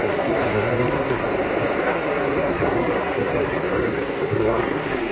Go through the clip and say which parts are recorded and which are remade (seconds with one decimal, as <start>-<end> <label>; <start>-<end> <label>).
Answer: 0.0-1.2 remade; 1.2-1.8 recorded; 1.8-5.1 remade